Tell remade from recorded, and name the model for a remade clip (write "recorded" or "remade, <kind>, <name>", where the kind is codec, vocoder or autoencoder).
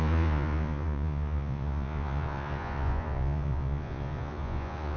remade, vocoder, Vocos